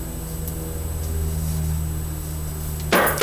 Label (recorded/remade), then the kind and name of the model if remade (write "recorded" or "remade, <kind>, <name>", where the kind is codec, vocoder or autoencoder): recorded